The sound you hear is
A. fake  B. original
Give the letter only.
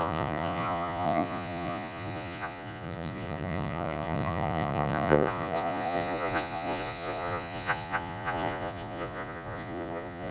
A